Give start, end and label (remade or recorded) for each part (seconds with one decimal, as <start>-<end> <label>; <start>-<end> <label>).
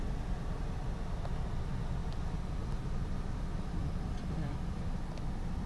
0.0-5.7 recorded